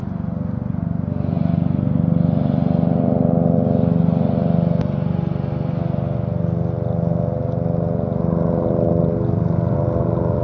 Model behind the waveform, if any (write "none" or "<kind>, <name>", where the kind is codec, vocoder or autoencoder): none